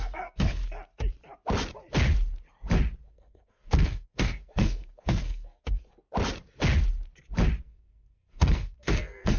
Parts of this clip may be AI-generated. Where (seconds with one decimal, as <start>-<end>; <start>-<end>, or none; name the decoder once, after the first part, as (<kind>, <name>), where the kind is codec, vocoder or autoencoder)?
0.0-0.6 (codec, SNAC); 3.1-5.9; 7.6-9.4